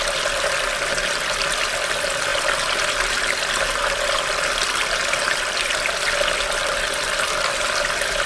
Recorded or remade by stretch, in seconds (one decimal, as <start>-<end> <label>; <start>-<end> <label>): 0.0-8.3 recorded